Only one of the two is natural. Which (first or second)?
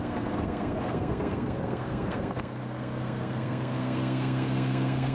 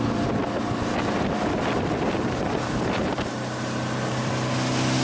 second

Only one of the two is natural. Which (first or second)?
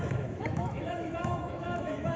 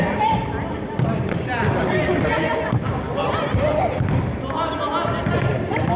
second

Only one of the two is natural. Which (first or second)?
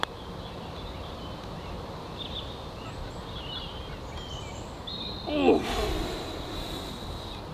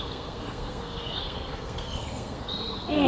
first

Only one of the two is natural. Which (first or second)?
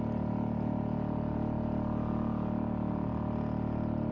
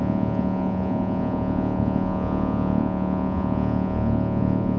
first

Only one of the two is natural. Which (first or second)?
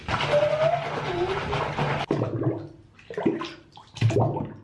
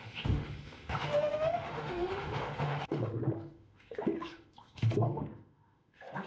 first